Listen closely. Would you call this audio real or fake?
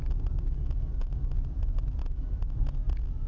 real